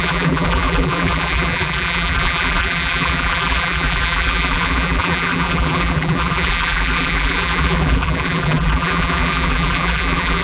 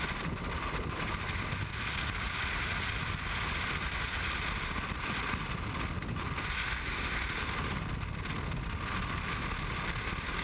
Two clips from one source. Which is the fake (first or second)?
first